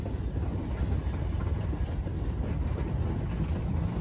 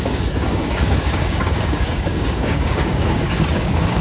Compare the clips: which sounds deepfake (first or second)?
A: second